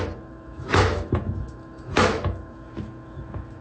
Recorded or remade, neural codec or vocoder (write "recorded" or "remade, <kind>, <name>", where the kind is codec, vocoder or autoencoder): remade, autoencoder, DAC-VAE